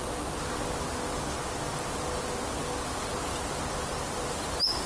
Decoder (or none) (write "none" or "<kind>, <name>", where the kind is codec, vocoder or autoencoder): none